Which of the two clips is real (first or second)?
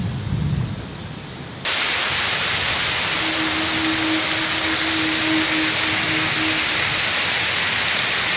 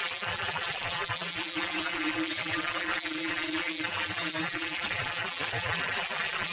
first